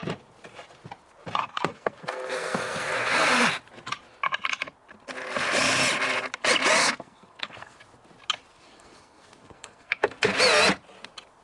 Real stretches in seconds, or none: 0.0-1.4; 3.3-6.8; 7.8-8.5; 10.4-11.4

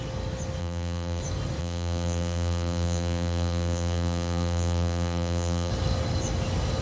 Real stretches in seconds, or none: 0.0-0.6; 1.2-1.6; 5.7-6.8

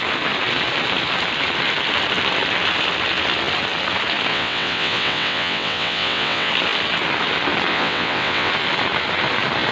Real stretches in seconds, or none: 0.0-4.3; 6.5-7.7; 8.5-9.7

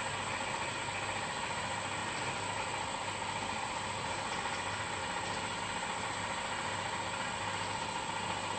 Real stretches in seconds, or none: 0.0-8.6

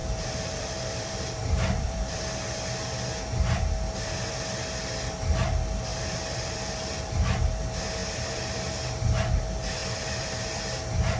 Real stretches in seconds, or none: 2.2-5.9; 6.8-8.0; 8.6-9.8; 10.6-11.2

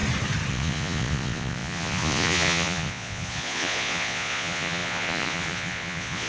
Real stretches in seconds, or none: 0.0-0.5